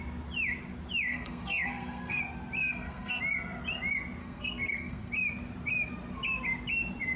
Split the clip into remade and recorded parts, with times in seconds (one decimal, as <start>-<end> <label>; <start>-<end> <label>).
0.0-1.1 recorded; 1.1-2.2 remade; 2.2-2.6 recorded; 2.6-3.2 remade; 3.2-4.2 recorded; 4.2-5.1 remade; 5.1-7.2 recorded